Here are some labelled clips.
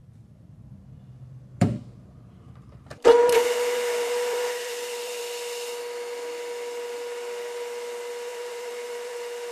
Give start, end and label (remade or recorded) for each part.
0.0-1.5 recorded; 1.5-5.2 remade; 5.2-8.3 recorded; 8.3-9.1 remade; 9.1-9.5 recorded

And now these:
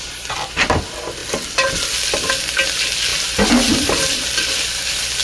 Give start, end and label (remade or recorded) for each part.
0.0-5.2 recorded

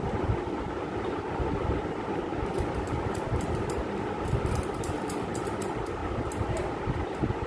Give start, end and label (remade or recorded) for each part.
0.0-2.3 remade; 2.3-3.0 recorded; 3.0-6.0 remade; 6.0-6.5 recorded; 6.5-7.5 remade

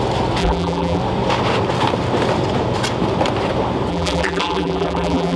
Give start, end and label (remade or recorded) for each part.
0.0-0.4 recorded; 0.4-1.0 remade; 1.0-3.9 recorded; 3.9-5.4 remade

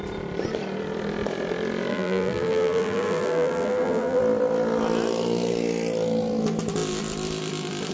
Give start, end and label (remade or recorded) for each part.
0.0-1.9 recorded; 1.9-4.2 remade; 4.2-7.9 recorded

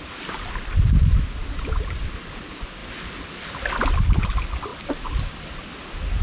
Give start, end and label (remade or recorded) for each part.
0.0-1.4 recorded; 1.4-2.2 remade; 2.2-6.2 recorded